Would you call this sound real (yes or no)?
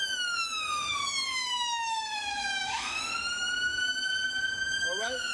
no